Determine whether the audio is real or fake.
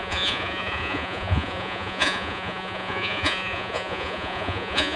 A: fake